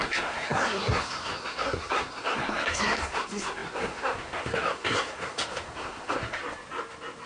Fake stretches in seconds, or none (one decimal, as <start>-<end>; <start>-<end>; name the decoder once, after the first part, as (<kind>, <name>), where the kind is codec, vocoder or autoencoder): 0.0-6.4 (codec, SNAC)

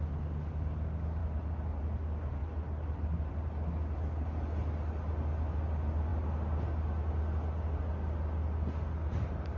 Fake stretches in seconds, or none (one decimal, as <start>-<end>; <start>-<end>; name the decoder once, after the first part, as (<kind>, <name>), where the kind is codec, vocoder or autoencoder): none